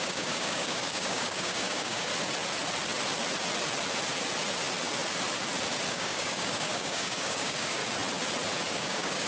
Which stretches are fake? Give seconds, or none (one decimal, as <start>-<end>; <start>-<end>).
0.0-2.1; 5.9-7.8; 8.7-9.3